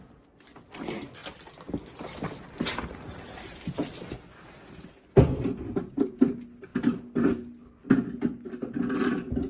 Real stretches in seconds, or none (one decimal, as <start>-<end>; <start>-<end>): 0.0-9.5